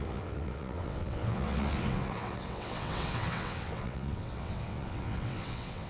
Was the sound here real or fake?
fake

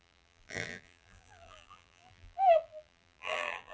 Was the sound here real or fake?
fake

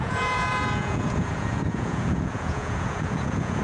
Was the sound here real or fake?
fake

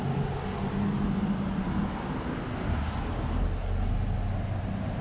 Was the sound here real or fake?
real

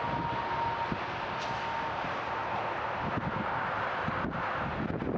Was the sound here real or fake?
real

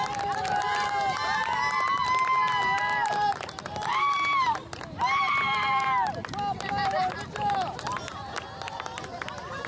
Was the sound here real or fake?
real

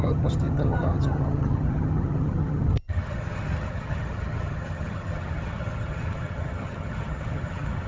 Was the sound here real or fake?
fake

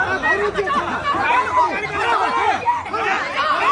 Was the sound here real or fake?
real